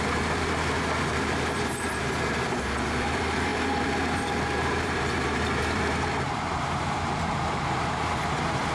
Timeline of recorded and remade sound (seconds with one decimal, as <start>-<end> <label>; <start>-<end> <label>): 0.0-8.7 remade